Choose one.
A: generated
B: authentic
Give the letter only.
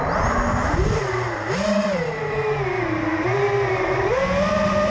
A